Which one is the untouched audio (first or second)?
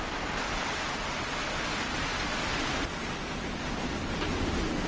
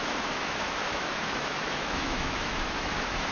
first